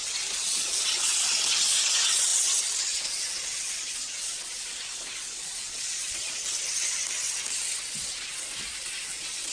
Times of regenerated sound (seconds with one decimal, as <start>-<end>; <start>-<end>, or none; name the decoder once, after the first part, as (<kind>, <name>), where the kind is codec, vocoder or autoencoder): 0.0-6.4 (vocoder, Vocos); 7.9-9.5